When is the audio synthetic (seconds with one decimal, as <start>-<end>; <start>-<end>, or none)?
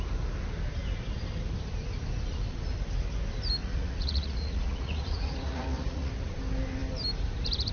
3.6-6.1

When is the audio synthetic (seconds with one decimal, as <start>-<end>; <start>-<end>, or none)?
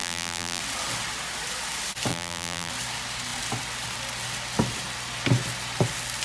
0.0-0.6; 2.1-2.7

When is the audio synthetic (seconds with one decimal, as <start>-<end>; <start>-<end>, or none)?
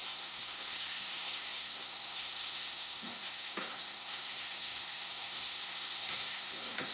0.0-6.9